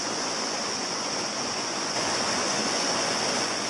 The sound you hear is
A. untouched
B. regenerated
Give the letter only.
B